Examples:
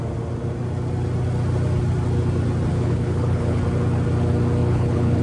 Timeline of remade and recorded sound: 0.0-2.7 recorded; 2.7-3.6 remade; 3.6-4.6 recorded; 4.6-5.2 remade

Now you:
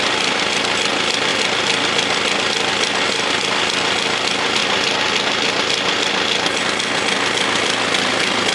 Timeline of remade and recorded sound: 0.0-8.5 recorded

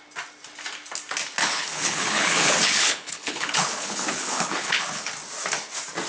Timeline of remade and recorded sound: 0.0-1.4 recorded; 1.4-5.1 remade; 5.1-6.1 recorded

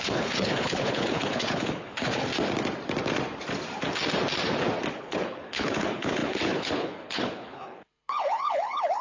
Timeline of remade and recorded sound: 0.0-2.3 remade; 2.3-4.9 recorded; 4.9-9.0 remade

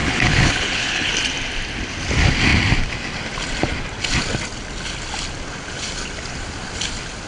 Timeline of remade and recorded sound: 0.0-1.1 remade; 1.1-7.3 recorded

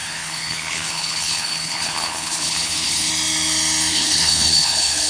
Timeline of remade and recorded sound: 0.0-3.1 remade; 3.1-3.9 recorded; 3.9-5.1 remade